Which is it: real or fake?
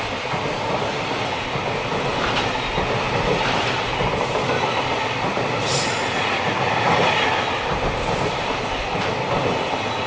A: real